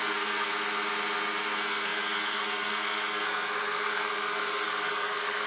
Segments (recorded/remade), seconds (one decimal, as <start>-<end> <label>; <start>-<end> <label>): 0.0-0.5 remade; 0.5-1.4 recorded; 1.4-5.5 remade